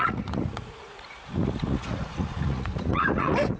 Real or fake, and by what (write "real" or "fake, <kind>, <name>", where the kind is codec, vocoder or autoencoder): fake, vocoder, Vocos